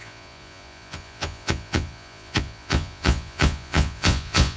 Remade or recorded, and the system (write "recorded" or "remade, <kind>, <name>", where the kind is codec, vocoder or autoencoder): remade, vocoder, Vocos